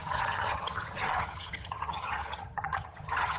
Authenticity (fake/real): fake